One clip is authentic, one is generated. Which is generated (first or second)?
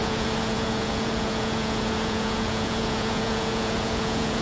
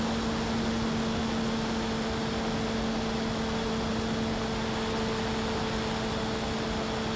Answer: first